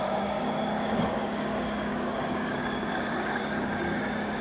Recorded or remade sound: remade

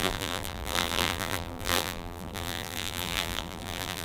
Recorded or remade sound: remade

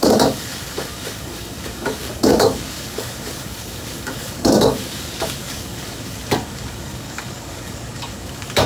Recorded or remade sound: remade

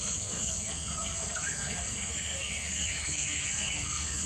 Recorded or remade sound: remade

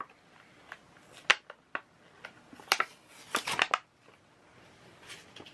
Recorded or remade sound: recorded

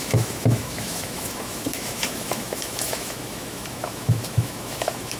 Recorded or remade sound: remade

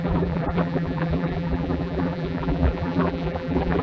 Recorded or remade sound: remade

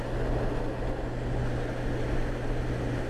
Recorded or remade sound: recorded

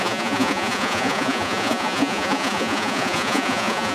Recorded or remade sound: remade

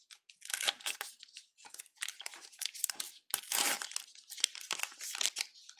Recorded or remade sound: recorded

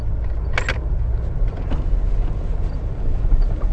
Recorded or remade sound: recorded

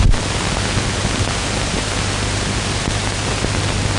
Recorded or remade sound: recorded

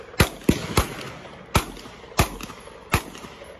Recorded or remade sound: recorded